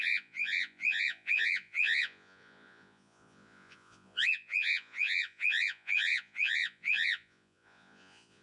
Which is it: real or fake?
fake